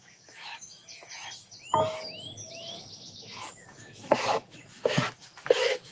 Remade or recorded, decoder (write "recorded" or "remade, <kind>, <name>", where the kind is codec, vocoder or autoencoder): remade, autoencoder, DAC-VAE